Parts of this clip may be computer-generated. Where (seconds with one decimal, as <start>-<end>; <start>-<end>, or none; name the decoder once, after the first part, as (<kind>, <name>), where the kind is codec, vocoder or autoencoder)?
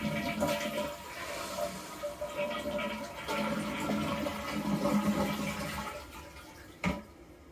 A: none